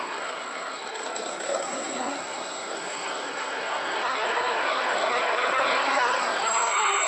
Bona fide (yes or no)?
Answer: no